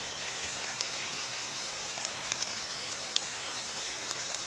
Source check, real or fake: fake